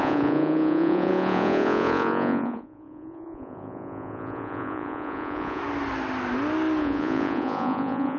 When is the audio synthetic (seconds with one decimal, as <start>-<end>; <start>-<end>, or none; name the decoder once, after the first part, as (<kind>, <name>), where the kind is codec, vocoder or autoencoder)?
0.0-5.6 (vocoder, Vocos); 6.8-8.2

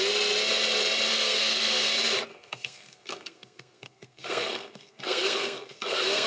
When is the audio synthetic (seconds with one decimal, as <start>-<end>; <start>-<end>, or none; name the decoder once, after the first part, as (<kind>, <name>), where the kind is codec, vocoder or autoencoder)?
1.1-1.9 (codec, SNAC); 2.3-6.3

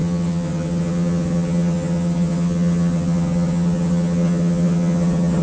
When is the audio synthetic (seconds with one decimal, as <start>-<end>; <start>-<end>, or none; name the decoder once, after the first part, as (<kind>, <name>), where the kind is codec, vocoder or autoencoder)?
0.0-5.4 (vocoder, HiFi-GAN)

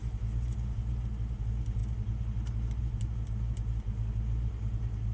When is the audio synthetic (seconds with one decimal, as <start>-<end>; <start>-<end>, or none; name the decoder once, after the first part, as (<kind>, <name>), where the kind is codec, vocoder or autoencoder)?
none